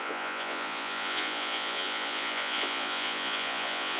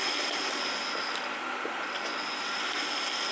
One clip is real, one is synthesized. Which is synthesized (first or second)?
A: first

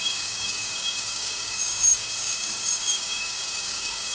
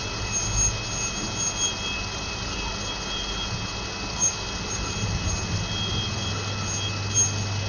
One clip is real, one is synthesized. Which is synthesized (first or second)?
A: first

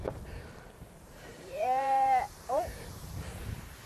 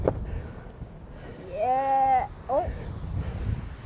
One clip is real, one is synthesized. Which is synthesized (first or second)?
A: first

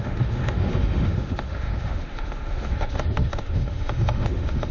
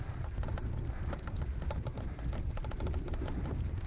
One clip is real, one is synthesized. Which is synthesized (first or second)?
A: first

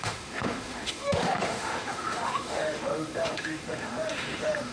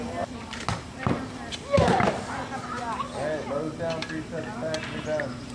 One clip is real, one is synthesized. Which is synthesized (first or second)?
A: first